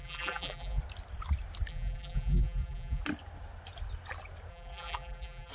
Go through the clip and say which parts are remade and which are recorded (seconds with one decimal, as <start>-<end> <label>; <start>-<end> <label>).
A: 0.0-0.8 remade; 0.8-1.7 recorded; 1.7-3.0 remade; 3.0-4.5 recorded; 4.5-5.5 remade